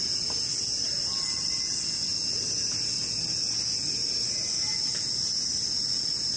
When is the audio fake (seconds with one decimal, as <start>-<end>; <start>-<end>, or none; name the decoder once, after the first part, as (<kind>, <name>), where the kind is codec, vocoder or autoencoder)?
none